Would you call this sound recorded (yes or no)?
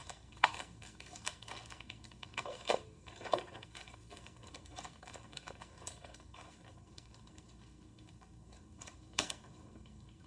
no